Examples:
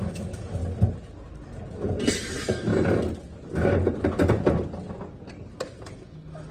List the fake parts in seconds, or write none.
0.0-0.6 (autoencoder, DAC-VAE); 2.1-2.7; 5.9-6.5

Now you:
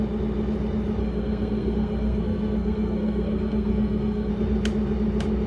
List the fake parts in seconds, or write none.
1.0-4.3 (codec, SNAC)

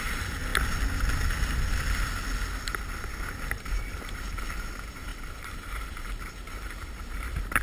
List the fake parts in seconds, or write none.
0.0-0.5 (vocoder, BigVGAN v2); 3.3-7.6

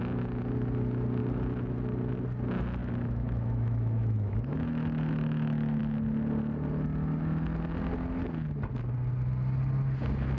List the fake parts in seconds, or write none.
2.8-5.8 (autoencoder, DAC-VAE)

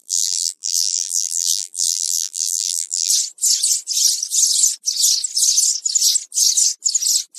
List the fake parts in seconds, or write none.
0.0-3.1 (vocoder, BigVGAN v2)